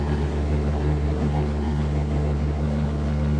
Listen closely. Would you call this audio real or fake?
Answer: fake